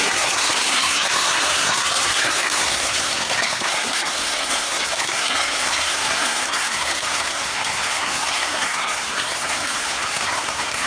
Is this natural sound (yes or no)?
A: no